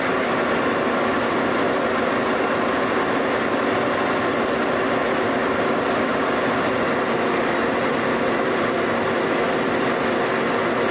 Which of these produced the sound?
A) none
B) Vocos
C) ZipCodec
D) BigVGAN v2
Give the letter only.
A